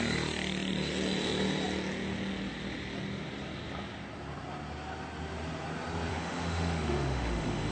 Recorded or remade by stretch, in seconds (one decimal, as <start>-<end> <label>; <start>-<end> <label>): 0.0-6.1 recorded; 6.1-7.7 remade